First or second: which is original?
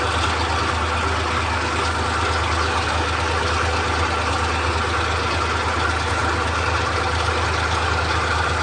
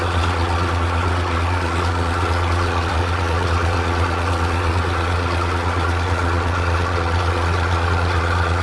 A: first